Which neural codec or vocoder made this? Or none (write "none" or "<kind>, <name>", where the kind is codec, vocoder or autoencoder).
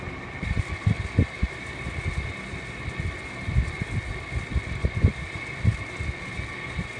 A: none